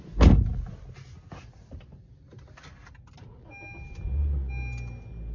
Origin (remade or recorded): recorded